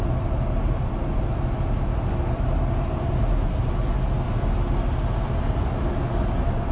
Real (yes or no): yes